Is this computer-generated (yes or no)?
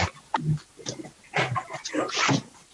no